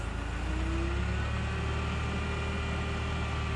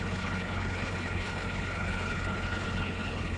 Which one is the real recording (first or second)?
first